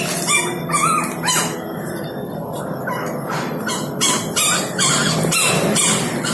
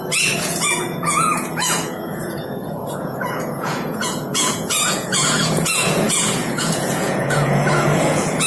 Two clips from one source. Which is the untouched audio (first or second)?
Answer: first